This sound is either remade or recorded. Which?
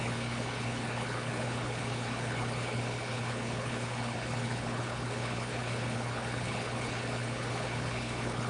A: remade